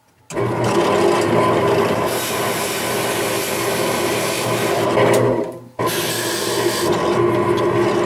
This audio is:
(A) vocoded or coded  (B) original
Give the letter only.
B